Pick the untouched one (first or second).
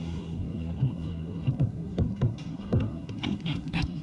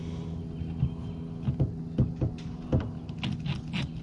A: second